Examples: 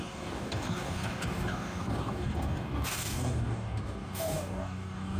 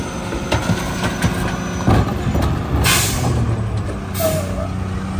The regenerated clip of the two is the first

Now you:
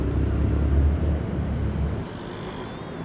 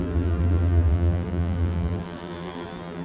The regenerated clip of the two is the second